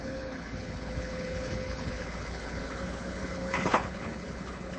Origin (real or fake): fake